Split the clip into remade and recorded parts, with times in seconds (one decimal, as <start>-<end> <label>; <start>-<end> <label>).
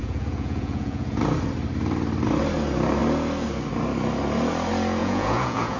0.0-1.2 remade; 1.2-5.0 recorded; 5.0-5.8 remade